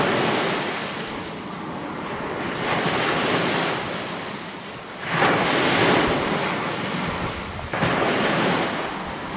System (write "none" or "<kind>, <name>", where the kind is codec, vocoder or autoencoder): none